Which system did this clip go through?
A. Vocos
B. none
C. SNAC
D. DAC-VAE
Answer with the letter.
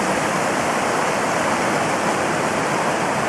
B